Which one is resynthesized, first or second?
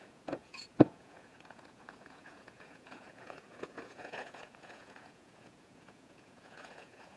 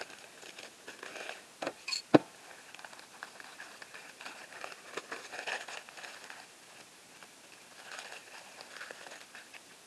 first